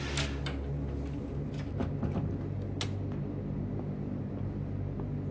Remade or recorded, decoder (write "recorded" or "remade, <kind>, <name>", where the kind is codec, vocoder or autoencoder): recorded